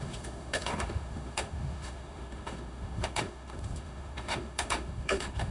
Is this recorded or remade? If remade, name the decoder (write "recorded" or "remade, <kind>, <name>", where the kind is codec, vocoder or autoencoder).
remade, autoencoder, DAC-VAE